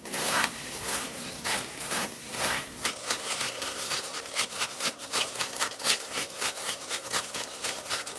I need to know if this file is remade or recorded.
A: remade